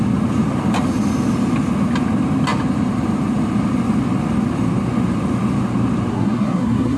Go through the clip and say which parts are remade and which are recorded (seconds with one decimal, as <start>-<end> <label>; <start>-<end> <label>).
0.0-6.1 recorded; 6.1-7.0 remade